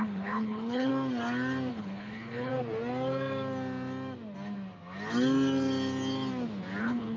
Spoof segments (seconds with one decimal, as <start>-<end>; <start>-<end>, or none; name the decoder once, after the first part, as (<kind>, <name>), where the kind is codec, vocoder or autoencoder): 0.0-0.9 (codec, HILCodec); 1.7-2.5; 6.8-7.2